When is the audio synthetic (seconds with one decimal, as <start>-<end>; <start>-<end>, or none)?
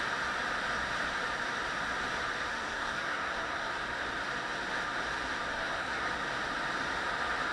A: 2.5-3.7; 5.5-6.1